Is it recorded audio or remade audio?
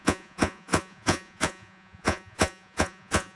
remade